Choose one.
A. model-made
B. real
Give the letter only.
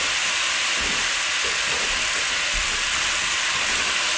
B